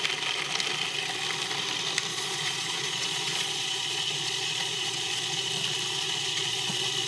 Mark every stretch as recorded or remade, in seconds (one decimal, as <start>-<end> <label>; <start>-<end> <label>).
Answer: 0.0-2.1 recorded; 2.1-5.5 remade; 5.5-5.9 recorded; 5.9-6.5 remade; 6.5-7.1 recorded